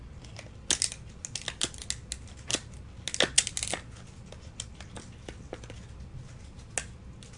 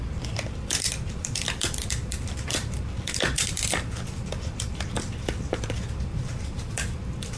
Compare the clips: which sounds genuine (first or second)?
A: first